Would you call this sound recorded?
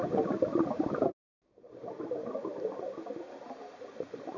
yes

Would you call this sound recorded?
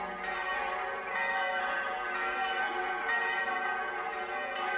yes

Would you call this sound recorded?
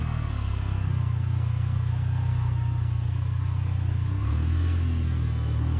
no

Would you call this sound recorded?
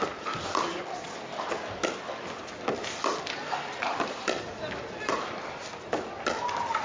yes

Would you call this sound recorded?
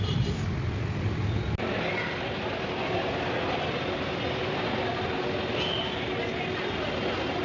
yes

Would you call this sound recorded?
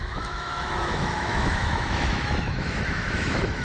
no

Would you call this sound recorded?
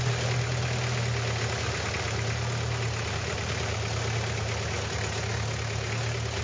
yes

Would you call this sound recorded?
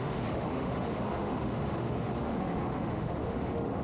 no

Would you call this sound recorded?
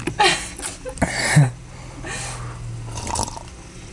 yes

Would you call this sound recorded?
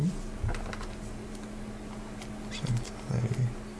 yes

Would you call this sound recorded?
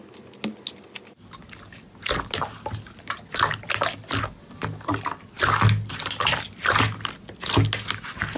yes